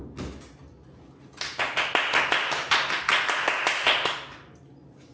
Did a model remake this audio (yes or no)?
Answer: no